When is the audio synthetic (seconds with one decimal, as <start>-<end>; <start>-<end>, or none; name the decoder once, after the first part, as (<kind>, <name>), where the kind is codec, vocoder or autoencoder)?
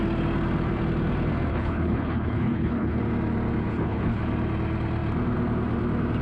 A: 1.5-3.0 (codec, HILCodec); 3.7-4.2